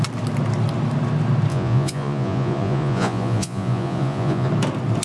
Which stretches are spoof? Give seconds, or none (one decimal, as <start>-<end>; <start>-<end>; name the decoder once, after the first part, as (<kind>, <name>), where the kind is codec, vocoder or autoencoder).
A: 1.5-4.5 (vocoder, Vocos)